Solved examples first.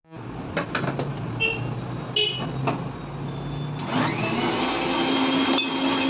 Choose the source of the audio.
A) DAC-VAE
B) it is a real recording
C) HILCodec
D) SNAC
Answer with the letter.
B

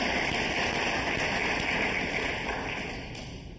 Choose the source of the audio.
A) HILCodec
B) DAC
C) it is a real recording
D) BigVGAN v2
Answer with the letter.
C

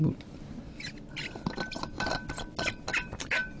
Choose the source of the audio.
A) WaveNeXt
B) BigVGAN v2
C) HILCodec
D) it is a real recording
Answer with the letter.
D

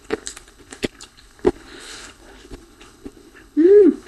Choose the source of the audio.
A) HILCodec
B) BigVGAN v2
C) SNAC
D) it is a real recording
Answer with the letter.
A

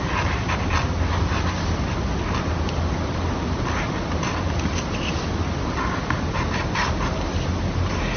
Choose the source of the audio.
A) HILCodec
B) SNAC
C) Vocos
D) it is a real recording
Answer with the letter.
D